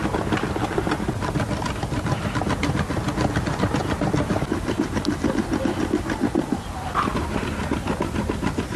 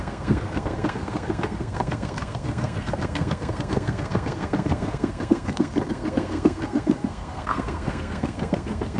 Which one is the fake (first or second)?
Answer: second